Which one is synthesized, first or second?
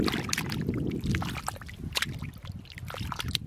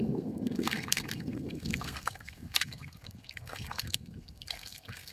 second